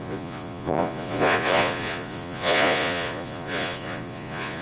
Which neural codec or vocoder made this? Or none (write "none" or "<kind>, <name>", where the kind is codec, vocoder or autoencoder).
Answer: vocoder, Vocos